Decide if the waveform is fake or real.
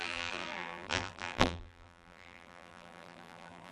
fake